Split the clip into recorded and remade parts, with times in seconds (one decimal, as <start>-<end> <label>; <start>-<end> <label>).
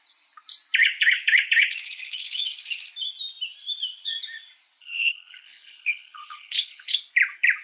0.0-0.8 recorded; 0.8-2.9 remade; 2.9-4.8 recorded; 4.8-6.9 remade; 6.9-7.6 recorded